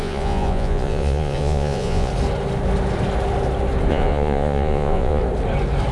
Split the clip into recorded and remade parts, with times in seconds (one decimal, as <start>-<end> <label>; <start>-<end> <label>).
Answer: 0.0-2.1 remade; 2.1-3.9 recorded; 3.9-5.2 remade; 5.2-5.9 recorded

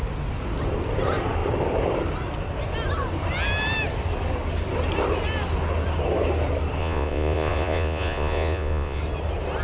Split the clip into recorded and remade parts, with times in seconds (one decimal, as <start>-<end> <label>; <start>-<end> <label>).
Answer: 0.0-6.8 recorded; 6.8-9.0 remade; 9.0-9.6 recorded

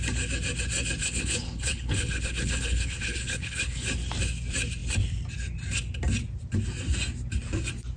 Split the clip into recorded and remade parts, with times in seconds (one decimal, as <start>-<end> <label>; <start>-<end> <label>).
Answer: 0.0-1.0 recorded; 1.0-3.9 remade; 3.9-8.0 recorded

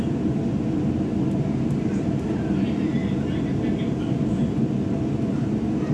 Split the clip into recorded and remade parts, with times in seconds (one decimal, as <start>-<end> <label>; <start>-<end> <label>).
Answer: 0.0-5.9 recorded

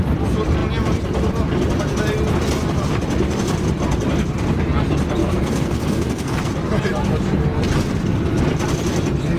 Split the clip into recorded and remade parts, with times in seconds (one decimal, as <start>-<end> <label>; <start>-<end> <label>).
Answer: 0.0-5.2 recorded; 5.2-6.5 remade; 6.5-9.4 recorded